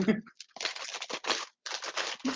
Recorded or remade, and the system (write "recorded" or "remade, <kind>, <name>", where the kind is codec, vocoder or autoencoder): remade, vocoder, BigVGAN v2